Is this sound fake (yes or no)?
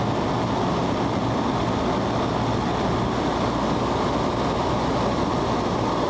no